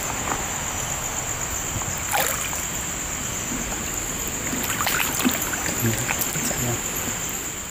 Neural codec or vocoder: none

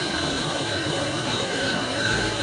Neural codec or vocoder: codec, SNAC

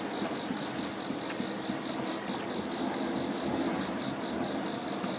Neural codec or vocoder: none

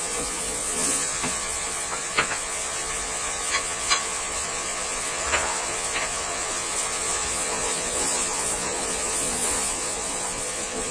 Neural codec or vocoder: vocoder, Vocos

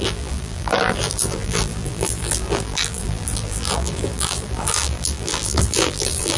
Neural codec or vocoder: vocoder, BigVGAN v2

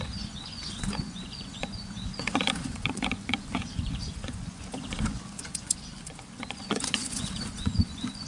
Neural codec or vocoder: vocoder, Vocos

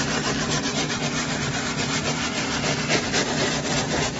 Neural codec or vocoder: none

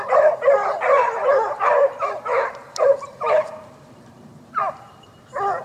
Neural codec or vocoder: vocoder, BigVGAN v2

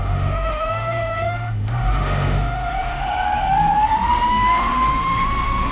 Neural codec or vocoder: autoencoder, DAC-VAE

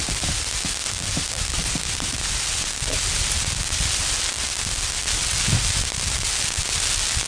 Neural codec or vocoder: none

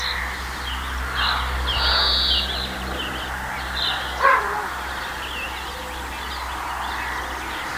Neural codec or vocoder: none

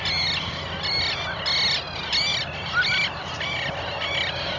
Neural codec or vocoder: none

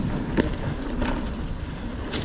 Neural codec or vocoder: none